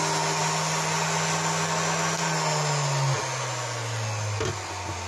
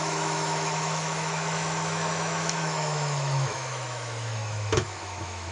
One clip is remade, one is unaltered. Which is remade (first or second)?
second